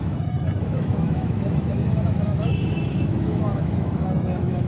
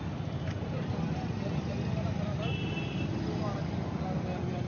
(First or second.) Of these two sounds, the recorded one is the second